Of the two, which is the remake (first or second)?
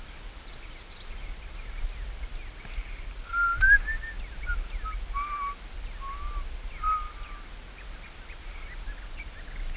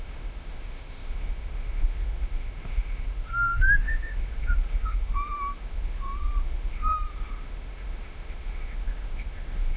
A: second